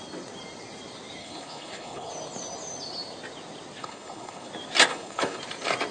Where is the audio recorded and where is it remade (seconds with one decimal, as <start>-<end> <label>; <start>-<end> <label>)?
0.0-1.2 recorded; 1.2-2.1 remade; 2.1-3.8 recorded; 3.8-4.5 remade; 4.5-4.9 recorded; 4.9-5.4 remade; 5.4-5.9 recorded

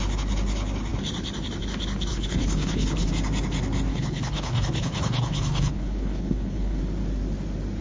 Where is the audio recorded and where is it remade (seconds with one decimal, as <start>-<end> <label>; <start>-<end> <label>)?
0.0-2.1 recorded; 2.1-3.1 remade; 3.1-3.9 recorded; 3.9-6.8 remade; 6.8-7.8 recorded

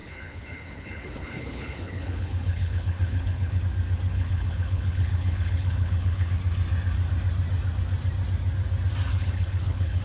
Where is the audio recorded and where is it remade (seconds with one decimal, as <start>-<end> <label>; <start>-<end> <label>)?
0.0-3.6 remade; 3.6-4.1 recorded; 4.1-6.3 remade; 6.3-9.1 recorded; 9.1-10.0 remade

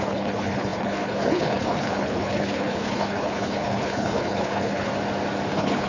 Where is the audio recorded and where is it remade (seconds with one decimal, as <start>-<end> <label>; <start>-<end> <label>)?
0.0-4.9 remade; 4.9-5.5 recorded; 5.5-5.9 remade

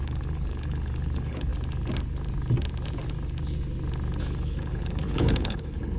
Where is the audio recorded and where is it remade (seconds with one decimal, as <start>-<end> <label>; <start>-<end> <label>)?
0.0-1.5 remade; 1.5-4.2 recorded; 4.2-6.0 remade

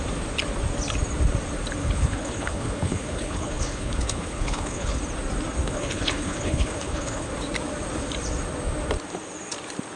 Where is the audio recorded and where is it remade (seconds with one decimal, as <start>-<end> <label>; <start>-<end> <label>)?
0.0-1.8 recorded; 1.8-5.0 remade; 5.0-5.6 recorded; 5.6-7.3 remade; 7.3-10.0 recorded

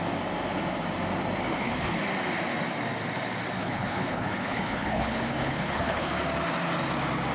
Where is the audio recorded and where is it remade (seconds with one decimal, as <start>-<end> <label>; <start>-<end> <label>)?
0.0-1.5 recorded; 1.5-2.0 remade; 2.0-3.6 recorded; 3.6-6.1 remade; 6.1-7.3 recorded